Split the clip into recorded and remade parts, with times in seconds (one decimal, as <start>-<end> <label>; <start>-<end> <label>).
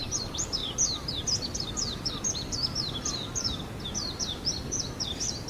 0.0-0.6 remade; 0.6-1.2 recorded; 1.2-5.5 remade